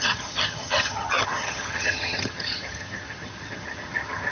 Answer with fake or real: fake